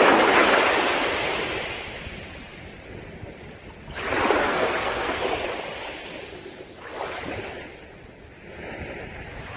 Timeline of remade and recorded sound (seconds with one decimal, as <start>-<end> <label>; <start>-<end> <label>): 0.0-4.4 recorded; 4.4-5.2 remade; 5.2-9.6 recorded